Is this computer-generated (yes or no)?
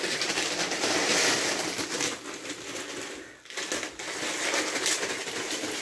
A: no